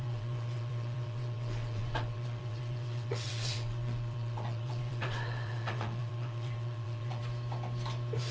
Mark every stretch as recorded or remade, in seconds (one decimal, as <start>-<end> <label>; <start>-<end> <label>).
0.0-7.2 remade; 7.2-8.3 recorded